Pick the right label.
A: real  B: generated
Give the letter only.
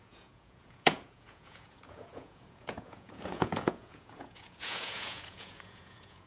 B